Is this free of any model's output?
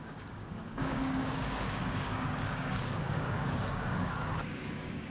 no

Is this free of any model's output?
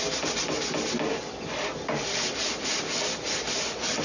yes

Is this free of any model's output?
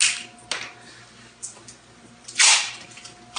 yes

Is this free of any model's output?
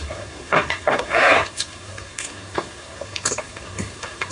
no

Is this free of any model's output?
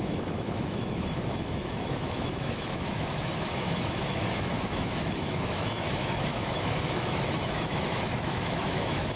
no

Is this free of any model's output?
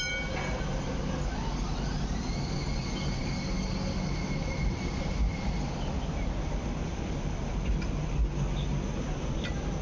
yes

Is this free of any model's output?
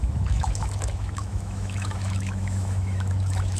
no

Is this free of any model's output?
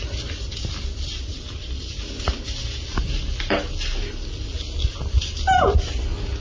yes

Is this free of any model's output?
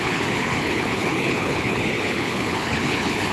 no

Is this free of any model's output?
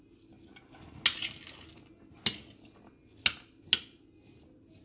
yes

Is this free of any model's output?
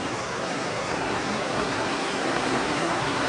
no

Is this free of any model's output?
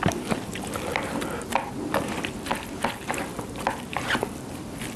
no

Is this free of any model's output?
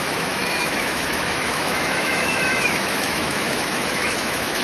no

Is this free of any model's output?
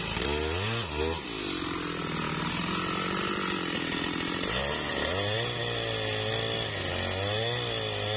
yes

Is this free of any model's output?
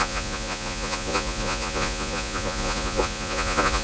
no